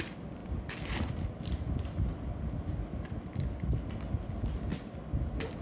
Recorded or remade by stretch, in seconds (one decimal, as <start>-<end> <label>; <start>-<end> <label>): 0.0-0.4 recorded; 0.4-1.1 remade; 1.1-5.6 recorded